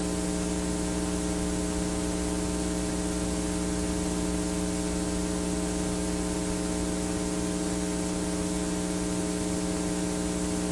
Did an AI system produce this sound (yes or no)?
no